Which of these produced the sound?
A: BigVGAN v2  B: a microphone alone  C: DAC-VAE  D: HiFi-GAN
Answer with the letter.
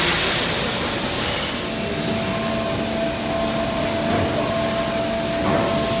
B